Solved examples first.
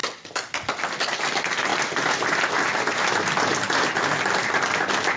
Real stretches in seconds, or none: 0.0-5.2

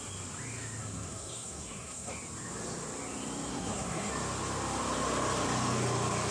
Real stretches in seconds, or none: 0.0-0.8; 2.1-3.5; 4.1-6.3

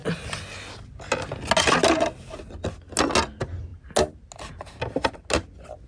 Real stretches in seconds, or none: 0.0-5.9